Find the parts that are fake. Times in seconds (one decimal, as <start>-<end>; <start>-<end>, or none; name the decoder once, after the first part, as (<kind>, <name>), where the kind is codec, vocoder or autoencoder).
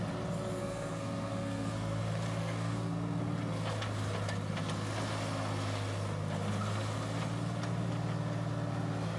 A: 0.6-2.0 (codec, SNAC); 2.4-3.2